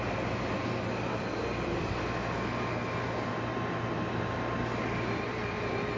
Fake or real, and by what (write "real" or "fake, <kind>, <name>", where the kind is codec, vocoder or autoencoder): real